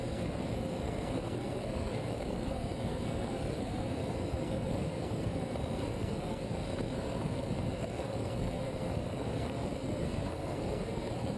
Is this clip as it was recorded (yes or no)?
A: no